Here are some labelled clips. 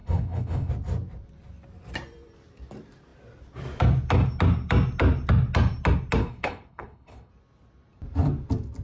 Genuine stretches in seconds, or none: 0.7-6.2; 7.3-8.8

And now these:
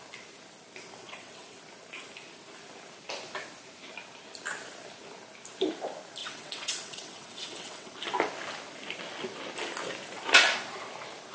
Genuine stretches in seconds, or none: 0.0-1.0; 1.6-6.2; 7.9-11.3